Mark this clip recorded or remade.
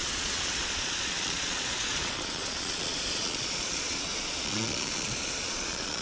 remade